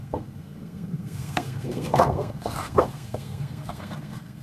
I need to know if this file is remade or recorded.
remade